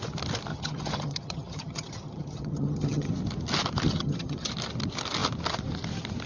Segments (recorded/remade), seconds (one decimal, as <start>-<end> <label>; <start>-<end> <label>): 0.0-0.5 recorded; 0.5-3.1 remade; 3.1-3.9 recorded; 3.9-4.5 remade; 4.5-6.3 recorded